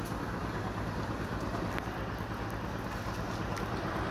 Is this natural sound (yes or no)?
yes